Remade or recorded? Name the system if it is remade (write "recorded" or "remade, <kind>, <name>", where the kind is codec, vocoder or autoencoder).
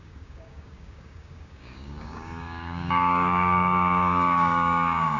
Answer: remade, codec, DAC